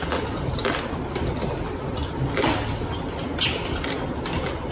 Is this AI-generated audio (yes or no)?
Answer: no